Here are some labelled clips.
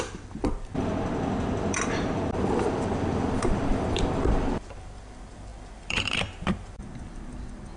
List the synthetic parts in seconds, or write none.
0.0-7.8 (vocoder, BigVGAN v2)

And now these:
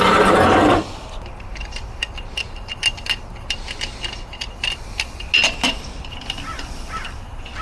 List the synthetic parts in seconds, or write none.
none

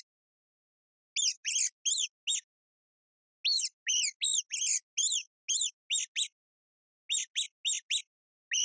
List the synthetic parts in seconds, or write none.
none

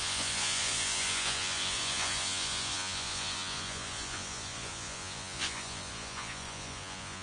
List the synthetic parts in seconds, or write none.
0.0-7.2 (vocoder, Vocos)

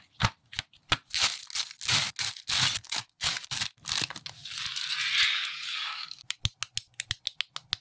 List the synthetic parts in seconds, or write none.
2.8-3.6 (codec, DAC); 5.3-6.4

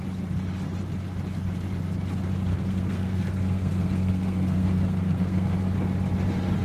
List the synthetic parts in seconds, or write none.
2.5-5.6 (codec, SNAC)

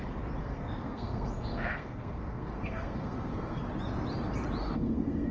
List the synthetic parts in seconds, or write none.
0.4-3.6 (codec, SNAC); 4.6-5.3

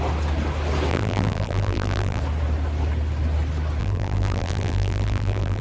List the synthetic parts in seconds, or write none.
0.9-2.2 (vocoder, BigVGAN v2); 3.8-5.6